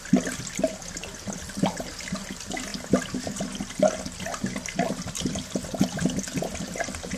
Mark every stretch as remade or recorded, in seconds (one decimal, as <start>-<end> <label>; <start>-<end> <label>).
0.0-7.2 recorded